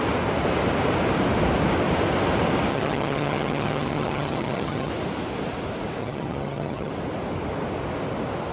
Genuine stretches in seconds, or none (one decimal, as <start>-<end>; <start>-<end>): 0.0-2.7; 4.9-6.0; 6.9-8.5